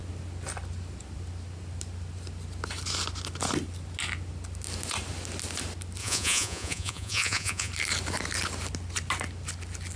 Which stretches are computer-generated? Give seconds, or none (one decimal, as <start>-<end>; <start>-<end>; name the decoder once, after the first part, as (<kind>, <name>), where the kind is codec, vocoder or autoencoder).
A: 6.0-7.7 (vocoder, Vocos)